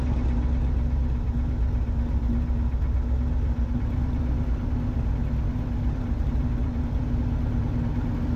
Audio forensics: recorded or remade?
recorded